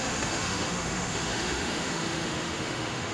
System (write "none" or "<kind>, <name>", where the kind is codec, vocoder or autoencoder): autoencoder, DAC-VAE